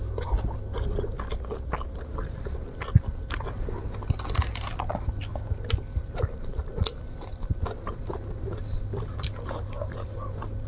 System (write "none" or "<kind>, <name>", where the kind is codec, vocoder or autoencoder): none